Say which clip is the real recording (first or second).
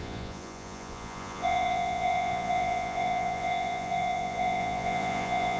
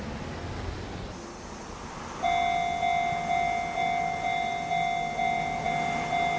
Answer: second